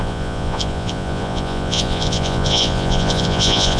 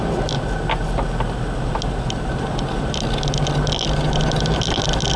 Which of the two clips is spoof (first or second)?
first